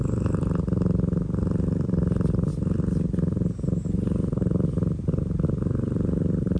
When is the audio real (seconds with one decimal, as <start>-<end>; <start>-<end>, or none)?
0.0-6.6